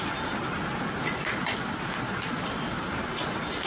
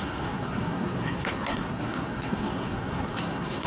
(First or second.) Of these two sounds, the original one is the first